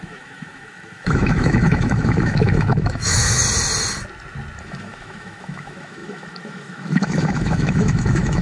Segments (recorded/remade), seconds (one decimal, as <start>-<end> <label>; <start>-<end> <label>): 0.0-3.4 remade; 3.4-4.6 recorded; 4.6-8.4 remade